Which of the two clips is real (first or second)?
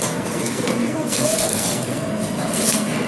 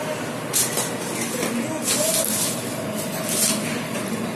second